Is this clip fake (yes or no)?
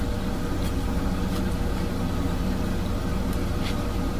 no